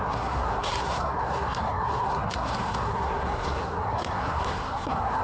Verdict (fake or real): fake